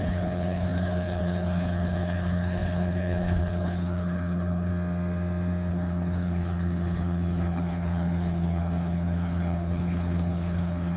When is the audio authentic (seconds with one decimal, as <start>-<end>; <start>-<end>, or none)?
4.7-5.7